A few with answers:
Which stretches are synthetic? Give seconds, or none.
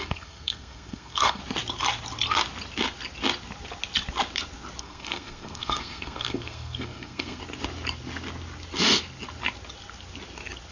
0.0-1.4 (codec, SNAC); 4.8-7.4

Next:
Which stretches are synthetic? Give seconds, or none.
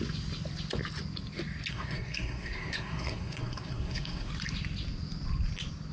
1.7-4.3 (codec, SNAC)